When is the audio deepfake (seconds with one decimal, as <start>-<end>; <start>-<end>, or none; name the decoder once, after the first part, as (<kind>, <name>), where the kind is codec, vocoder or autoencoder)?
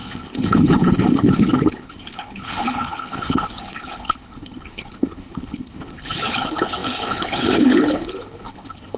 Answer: 0.0-9.0 (codec, HILCodec)